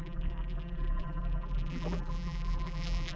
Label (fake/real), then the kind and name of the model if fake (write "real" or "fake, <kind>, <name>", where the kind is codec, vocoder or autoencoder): fake, vocoder, BigVGAN v2